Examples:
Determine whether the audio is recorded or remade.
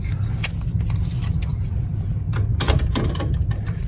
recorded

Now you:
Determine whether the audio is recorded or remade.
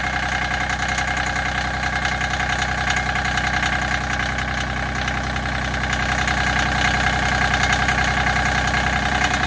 recorded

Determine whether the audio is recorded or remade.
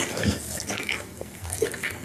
remade